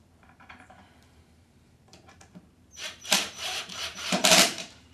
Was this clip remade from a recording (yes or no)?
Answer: yes